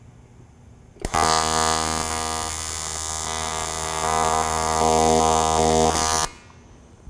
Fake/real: real